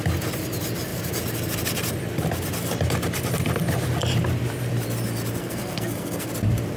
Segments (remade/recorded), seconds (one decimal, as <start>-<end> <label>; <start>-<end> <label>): 0.0-5.4 recorded; 5.4-6.3 remade; 6.3-6.8 recorded